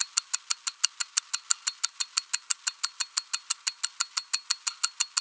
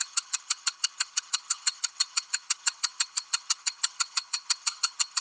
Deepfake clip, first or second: second